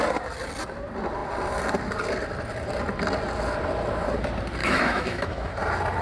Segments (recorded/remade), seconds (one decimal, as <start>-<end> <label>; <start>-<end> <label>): 0.0-4.6 recorded; 4.6-5.5 remade; 5.5-6.0 recorded